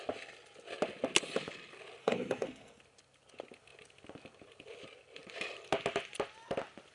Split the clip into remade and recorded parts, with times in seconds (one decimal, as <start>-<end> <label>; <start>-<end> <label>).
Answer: 0.0-2.0 recorded; 2.0-2.8 remade; 2.8-6.9 recorded